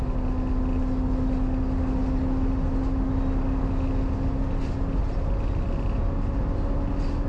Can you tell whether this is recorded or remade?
recorded